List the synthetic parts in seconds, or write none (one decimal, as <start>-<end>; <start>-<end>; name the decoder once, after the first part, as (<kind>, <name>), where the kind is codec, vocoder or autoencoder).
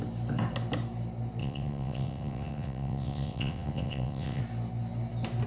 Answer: 1.4-4.4 (vocoder, WaveNeXt)